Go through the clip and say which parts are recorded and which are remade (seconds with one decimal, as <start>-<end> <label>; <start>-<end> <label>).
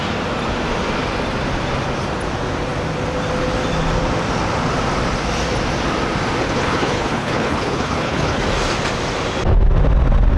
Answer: 0.0-6.4 recorded; 6.4-8.4 remade; 8.4-10.4 recorded